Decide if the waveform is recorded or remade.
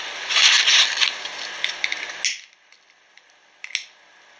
recorded